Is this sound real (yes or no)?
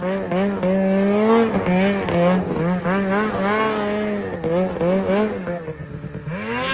yes